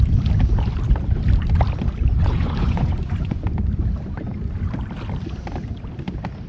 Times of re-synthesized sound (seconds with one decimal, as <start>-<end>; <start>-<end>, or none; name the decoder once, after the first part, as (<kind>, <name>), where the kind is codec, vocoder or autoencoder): 2.2-3.4 (vocoder, Vocos)